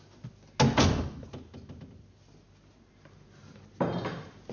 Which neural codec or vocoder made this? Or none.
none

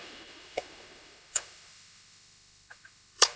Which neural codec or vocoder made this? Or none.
autoencoder, DAC-VAE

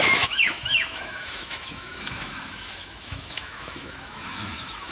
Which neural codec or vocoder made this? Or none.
autoencoder, DAC-VAE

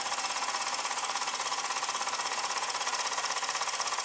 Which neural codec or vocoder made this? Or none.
vocoder, Vocos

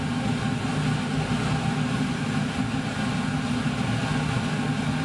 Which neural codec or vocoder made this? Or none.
none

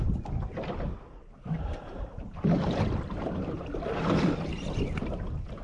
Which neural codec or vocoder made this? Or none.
none